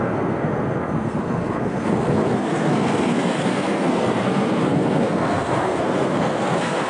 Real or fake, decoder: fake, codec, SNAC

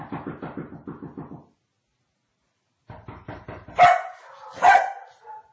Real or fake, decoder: real